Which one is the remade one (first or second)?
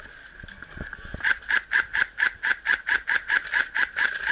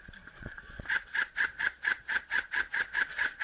second